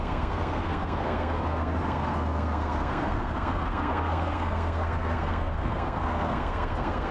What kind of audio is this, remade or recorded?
remade